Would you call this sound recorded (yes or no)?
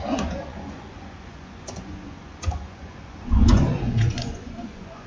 no